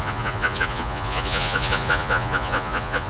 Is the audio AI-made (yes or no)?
yes